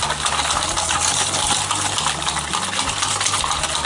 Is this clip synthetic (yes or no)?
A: no